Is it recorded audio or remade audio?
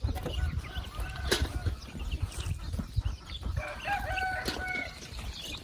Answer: recorded